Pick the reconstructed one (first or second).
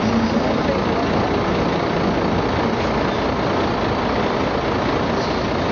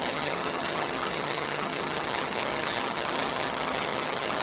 second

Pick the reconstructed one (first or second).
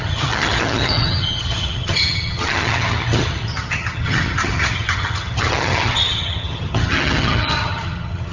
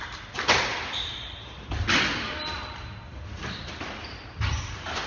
first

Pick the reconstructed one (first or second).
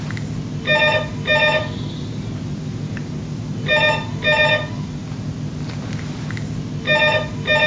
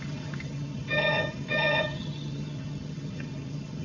second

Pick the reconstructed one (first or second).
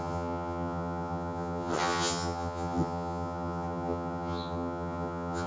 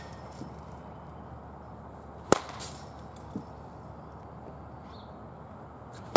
first